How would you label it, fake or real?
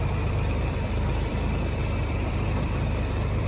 fake